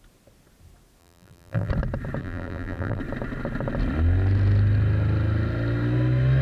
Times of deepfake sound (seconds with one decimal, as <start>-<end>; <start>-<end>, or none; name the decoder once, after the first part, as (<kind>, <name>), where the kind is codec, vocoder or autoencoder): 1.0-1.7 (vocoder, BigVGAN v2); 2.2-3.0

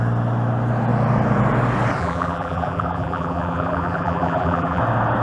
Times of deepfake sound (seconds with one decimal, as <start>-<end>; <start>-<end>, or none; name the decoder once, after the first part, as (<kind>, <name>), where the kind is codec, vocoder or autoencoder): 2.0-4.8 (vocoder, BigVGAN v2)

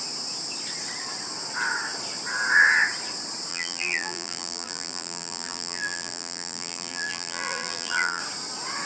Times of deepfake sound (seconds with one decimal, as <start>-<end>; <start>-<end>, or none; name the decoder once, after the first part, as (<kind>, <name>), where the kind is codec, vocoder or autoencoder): 3.5-8.2 (vocoder, BigVGAN v2)

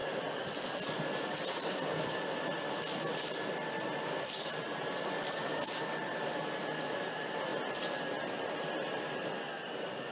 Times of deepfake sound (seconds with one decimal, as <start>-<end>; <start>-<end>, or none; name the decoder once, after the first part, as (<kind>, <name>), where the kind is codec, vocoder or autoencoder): none

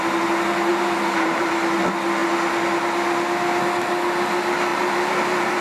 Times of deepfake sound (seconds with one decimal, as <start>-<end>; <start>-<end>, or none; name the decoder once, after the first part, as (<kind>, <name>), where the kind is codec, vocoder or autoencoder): 0.7-1.6 (vocoder, BigVGAN v2); 4.7-5.6

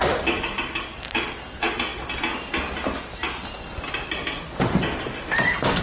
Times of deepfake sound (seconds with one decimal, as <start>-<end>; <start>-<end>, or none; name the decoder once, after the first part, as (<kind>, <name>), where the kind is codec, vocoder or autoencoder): none